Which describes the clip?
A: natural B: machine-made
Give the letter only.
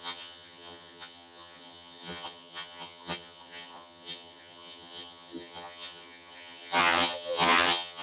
B